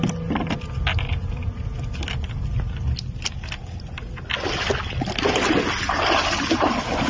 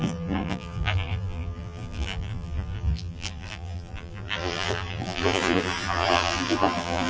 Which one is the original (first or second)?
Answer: first